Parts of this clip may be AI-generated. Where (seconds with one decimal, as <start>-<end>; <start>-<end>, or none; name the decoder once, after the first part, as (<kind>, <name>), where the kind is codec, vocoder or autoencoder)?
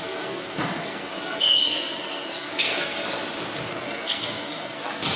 0.0-3.0 (codec, SNAC); 3.7-5.2